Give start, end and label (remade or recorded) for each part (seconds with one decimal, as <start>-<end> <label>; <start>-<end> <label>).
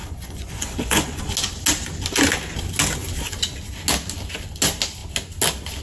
0.0-1.3 remade; 1.3-5.8 recorded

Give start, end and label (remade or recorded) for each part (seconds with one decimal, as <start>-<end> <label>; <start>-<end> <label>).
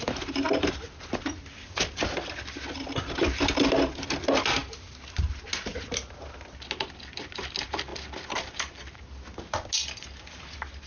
0.0-10.9 recorded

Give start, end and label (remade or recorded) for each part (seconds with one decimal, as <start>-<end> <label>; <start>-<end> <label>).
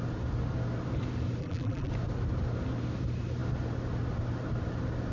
0.0-1.4 recorded; 1.4-1.9 remade; 1.9-5.1 recorded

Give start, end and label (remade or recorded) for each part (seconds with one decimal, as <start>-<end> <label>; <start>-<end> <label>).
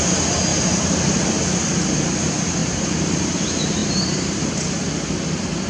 0.0-0.5 recorded; 0.5-1.4 remade; 1.4-2.6 recorded; 2.6-3.2 remade; 3.2-3.8 recorded; 3.8-4.5 remade; 4.5-5.7 recorded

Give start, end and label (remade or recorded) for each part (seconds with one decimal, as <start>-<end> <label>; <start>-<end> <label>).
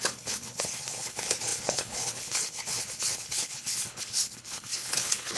0.0-5.4 remade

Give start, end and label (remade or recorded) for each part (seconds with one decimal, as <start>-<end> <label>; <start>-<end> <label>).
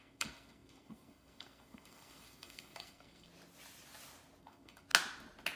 0.0-3.3 remade; 3.3-4.4 recorded; 4.4-4.9 remade; 4.9-5.6 recorded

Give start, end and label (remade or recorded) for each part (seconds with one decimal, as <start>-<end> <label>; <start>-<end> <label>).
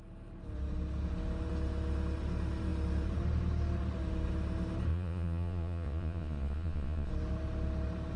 0.0-4.9 recorded; 4.9-7.1 remade; 7.1-8.2 recorded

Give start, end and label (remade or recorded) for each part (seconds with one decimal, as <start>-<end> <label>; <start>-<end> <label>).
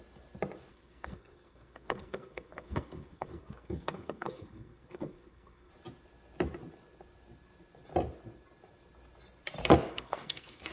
0.0-0.7 recorded; 0.7-5.7 remade; 5.7-9.9 recorded; 9.9-10.7 remade